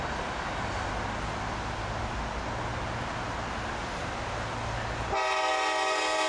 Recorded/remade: recorded